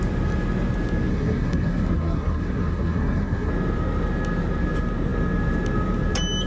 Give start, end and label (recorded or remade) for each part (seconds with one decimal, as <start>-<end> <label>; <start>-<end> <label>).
0.0-1.1 recorded; 1.1-3.5 remade; 3.5-6.5 recorded